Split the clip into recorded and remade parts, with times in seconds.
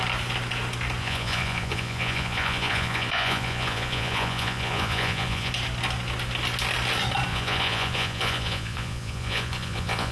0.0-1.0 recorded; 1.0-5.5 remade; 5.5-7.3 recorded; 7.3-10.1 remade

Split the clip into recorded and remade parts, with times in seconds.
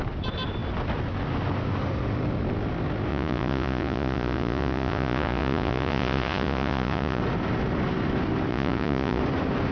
0.0-3.1 recorded; 3.1-7.2 remade; 7.2-8.5 recorded; 8.5-9.2 remade; 9.2-9.7 recorded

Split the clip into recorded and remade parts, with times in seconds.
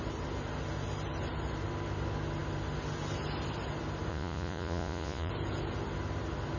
0.0-4.1 recorded; 4.1-5.3 remade; 5.3-6.6 recorded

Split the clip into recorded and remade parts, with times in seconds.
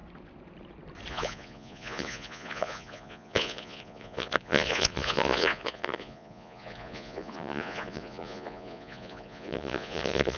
0.0-1.1 recorded; 1.1-10.4 remade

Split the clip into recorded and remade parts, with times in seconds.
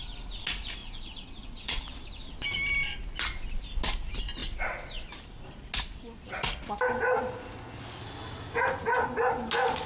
0.0-0.8 recorded; 0.8-1.8 remade; 1.8-9.9 recorded